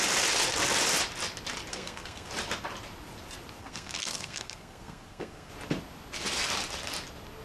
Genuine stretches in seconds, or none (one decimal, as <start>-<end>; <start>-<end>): 0.0-1.7; 2.3-3.6; 5.5-7.4